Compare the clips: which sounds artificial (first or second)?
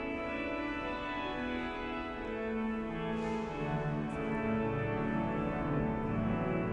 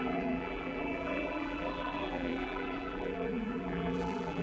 second